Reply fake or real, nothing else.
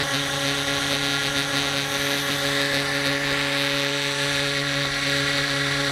real